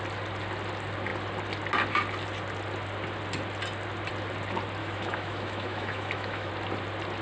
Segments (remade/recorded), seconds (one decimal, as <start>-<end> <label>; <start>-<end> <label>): 0.0-4.8 recorded; 4.8-6.5 remade; 6.5-7.2 recorded